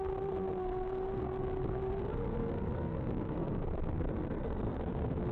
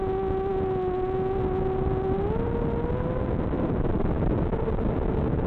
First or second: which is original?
second